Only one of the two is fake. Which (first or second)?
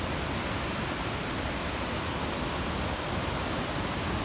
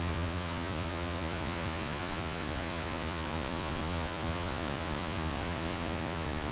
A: second